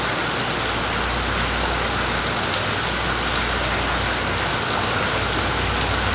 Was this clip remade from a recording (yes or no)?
no